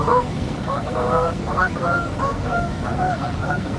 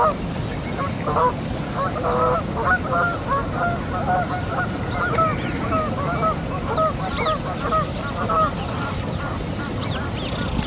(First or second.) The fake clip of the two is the first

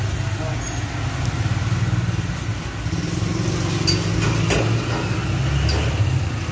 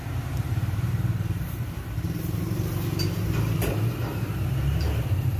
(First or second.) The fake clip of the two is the second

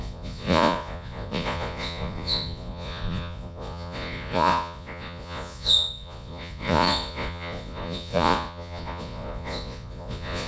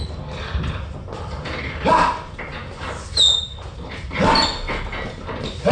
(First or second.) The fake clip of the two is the first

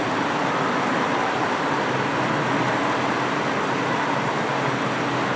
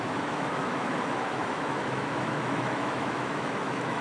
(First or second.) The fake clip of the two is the second